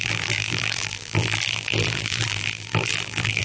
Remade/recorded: remade